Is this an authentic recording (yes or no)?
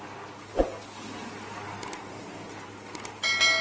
yes